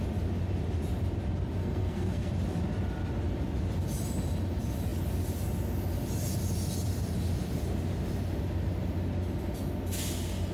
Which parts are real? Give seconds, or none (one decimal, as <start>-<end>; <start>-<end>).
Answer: 0.0-1.6; 2.3-10.5

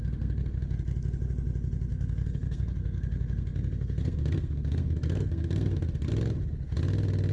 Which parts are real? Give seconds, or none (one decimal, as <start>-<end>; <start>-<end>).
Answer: 0.6-1.9; 6.1-7.3

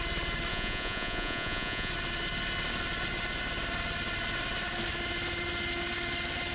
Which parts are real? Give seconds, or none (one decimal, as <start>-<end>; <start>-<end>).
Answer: 0.0-0.5; 1.9-6.5

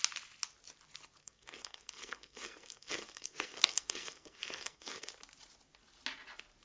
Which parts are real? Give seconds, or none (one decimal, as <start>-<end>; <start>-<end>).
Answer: 0.0-1.2; 5.1-6.6

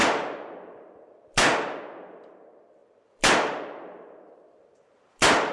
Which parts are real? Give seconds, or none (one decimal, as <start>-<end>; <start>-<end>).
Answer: 1.5-2.1